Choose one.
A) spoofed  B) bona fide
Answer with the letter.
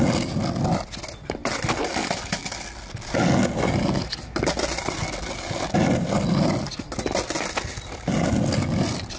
B